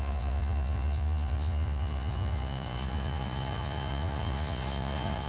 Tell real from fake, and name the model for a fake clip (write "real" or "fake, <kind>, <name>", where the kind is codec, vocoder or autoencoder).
fake, vocoder, Vocos